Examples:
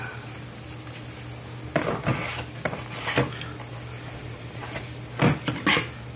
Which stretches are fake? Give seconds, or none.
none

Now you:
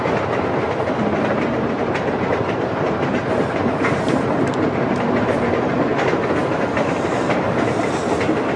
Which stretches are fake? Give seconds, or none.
1.3-4.5 (vocoder, BigVGAN v2)

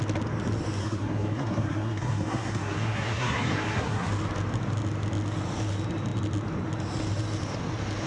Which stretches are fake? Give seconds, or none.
0.8-4.1 (codec, SNAC)

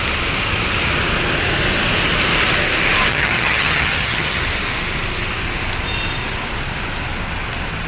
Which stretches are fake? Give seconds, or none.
3.1-4.4 (vocoder, HiFi-GAN)